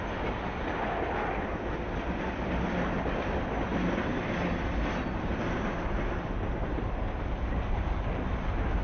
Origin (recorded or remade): recorded